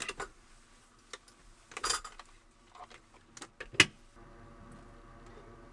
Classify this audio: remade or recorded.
recorded